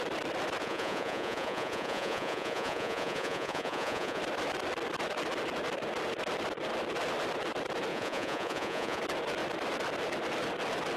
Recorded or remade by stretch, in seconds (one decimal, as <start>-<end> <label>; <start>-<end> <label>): 0.0-0.6 recorded; 0.6-4.2 remade; 4.2-7.9 recorded; 7.9-9.0 remade; 9.0-11.0 recorded